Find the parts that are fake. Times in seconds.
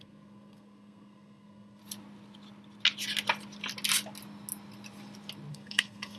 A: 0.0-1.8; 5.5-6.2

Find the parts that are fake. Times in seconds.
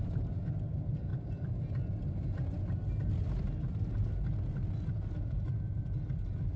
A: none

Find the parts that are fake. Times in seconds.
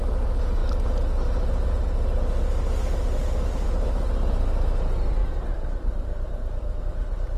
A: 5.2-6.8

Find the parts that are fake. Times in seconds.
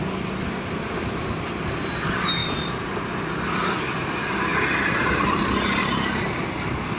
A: none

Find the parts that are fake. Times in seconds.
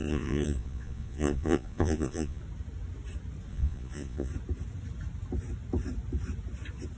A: 0.0-2.4; 3.5-4.3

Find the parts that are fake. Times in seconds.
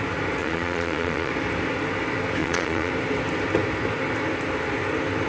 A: 0.4-1.3; 2.4-2.9